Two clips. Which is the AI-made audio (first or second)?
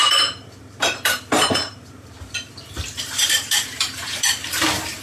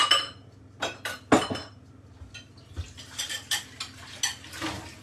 first